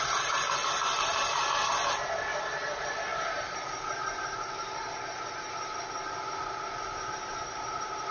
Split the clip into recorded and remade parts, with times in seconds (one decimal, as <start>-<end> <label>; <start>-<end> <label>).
0.0-8.1 recorded

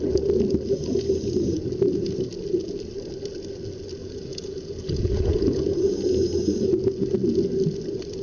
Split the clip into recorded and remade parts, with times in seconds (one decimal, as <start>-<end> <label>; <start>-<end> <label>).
0.0-4.0 recorded; 4.0-5.7 remade; 5.7-8.2 recorded